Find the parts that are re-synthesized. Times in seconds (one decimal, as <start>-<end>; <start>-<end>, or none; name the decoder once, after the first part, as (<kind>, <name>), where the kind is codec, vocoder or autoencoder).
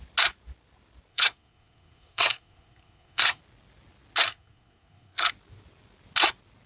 1.1-3.4 (codec, SNAC); 4.3-5.3